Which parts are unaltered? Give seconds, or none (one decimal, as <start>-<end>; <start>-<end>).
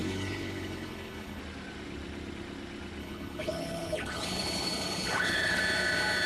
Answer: 1.4-3.0; 5.6-6.3